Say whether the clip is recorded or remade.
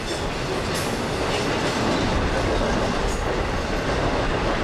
recorded